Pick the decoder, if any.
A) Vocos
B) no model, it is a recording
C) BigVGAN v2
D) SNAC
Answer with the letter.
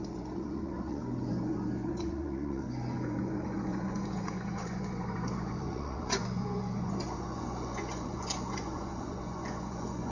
A